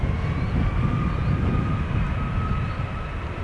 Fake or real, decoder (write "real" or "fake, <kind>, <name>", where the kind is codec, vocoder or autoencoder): real